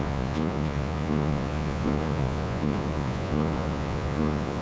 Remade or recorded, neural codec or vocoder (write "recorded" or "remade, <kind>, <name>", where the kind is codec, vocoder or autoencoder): remade, vocoder, Vocos